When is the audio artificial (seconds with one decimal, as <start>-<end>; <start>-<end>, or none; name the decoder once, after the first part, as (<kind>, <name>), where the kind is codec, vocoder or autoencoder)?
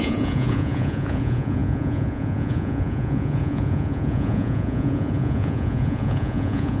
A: 0.0-6.8 (vocoder, Vocos)